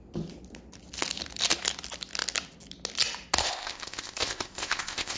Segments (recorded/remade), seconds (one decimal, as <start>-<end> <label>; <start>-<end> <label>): 0.0-3.4 recorded; 3.4-5.2 remade